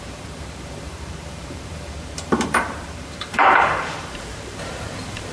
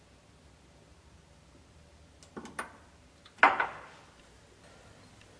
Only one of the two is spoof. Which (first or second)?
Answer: first